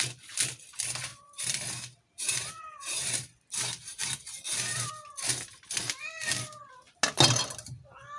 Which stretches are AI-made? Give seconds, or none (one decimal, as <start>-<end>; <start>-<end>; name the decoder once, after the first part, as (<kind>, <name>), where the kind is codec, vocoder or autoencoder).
1.1-4.9 (vocoder, BigVGAN v2)